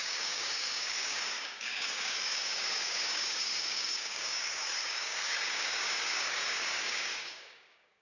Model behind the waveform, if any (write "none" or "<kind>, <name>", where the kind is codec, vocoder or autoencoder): codec, DAC